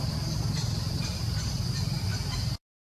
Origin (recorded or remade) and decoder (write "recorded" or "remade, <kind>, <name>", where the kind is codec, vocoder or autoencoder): remade, vocoder, BigVGAN v2